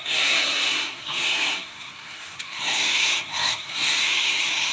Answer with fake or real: fake